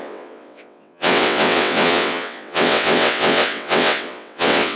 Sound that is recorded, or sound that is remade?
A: remade